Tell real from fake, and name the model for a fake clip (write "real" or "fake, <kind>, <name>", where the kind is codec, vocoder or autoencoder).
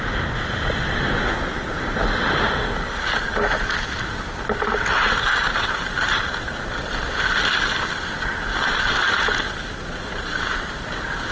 real